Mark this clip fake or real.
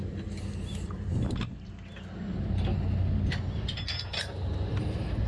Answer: real